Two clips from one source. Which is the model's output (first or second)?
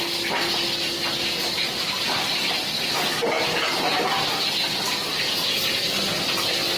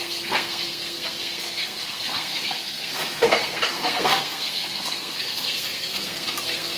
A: second